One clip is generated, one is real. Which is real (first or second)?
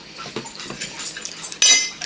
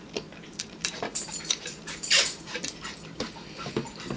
first